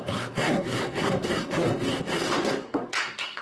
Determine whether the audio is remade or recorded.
remade